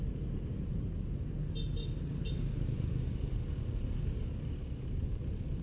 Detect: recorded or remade recorded